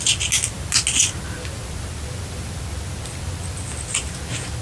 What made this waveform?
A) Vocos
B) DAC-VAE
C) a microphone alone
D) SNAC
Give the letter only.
C